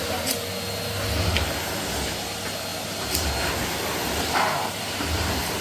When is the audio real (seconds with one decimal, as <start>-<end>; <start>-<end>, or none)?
0.0-4.0